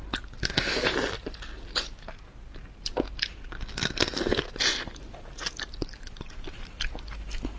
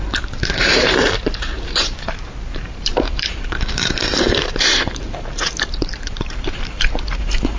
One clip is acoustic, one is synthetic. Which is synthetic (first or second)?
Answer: second